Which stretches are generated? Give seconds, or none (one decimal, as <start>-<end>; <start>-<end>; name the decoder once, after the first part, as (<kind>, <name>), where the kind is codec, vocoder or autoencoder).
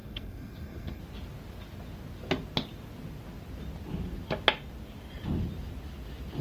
0.0-1.0 (codec, SNAC)